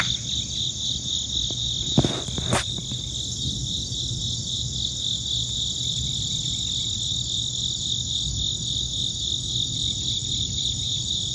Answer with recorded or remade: recorded